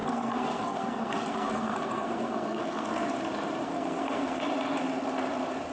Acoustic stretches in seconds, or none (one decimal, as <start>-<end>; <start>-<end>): 2.9-3.6; 4.4-5.7